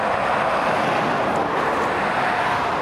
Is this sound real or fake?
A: real